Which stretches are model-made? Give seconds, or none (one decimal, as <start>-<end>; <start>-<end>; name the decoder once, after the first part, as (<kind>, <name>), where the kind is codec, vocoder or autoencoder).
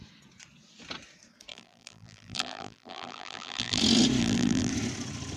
1.5-3.8 (vocoder, BigVGAN v2); 4.2-4.7